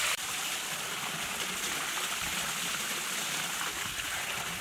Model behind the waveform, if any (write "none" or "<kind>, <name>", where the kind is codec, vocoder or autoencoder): none